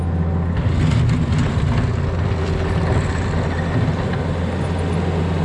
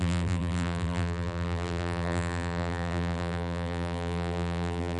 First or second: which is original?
first